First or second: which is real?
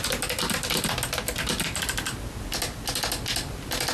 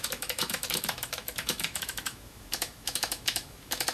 first